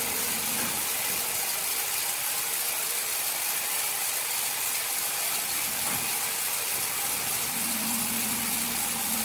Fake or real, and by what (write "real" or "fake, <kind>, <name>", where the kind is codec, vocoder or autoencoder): real